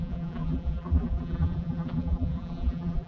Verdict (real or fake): fake